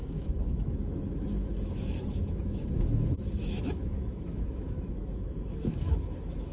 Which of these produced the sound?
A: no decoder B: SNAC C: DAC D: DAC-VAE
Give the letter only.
D